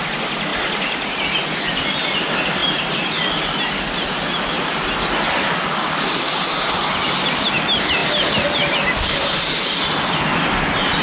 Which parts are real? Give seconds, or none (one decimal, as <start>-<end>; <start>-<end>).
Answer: 0.0-11.0